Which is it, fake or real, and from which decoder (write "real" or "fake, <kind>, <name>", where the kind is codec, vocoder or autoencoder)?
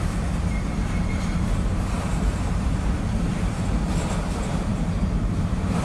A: fake, vocoder, BigVGAN v2